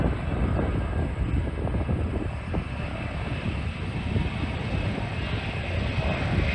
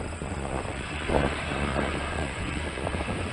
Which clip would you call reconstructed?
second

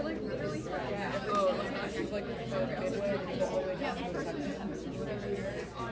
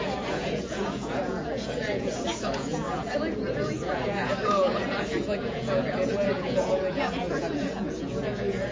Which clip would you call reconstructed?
second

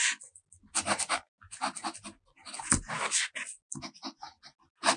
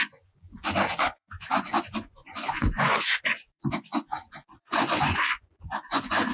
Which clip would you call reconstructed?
second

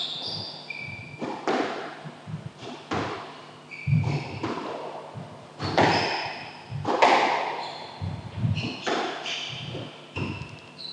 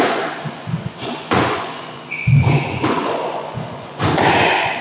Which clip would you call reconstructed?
second